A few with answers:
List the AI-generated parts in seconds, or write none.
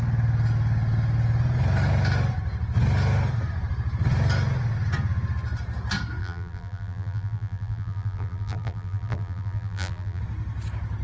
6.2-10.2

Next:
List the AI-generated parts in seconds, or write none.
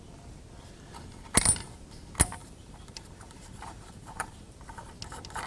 2.4-4.6